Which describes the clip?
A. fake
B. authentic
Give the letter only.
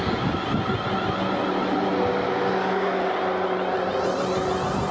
B